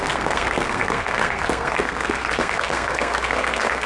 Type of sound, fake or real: fake